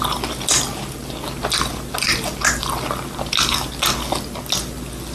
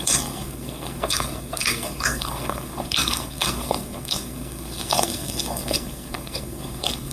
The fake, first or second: second